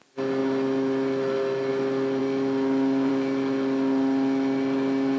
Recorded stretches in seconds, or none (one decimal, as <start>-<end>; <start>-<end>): 0.0-5.2